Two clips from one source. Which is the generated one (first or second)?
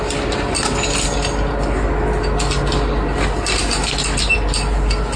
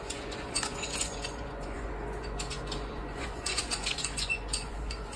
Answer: second